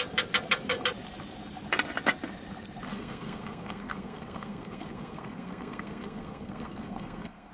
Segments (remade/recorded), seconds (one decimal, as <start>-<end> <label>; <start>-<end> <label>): 0.0-2.9 recorded; 2.9-7.5 remade